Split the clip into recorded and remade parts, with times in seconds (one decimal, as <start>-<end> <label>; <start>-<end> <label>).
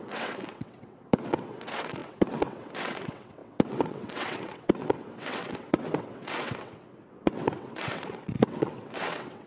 0.0-9.5 remade